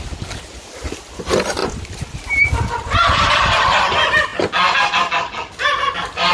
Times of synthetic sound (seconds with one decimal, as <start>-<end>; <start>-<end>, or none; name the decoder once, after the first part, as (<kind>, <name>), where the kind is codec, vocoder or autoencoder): 0.0-4.3 (vocoder, BigVGAN v2); 5.2-6.3